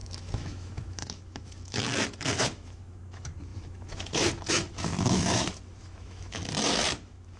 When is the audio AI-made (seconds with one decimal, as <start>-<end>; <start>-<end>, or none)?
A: 0.0-6.4; 7.0-7.4